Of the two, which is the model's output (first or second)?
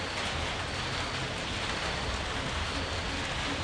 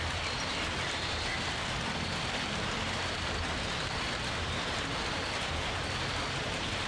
second